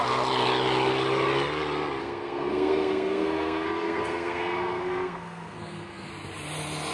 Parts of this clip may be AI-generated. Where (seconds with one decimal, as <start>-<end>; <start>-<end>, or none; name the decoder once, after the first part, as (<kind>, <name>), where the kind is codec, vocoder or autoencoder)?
2.0-6.1 (codec, SNAC)